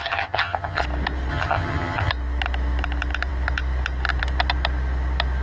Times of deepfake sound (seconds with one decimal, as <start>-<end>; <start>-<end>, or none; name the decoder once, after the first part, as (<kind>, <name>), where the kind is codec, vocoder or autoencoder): 0.0-0.8 (vocoder, HiFi-GAN); 1.3-2.1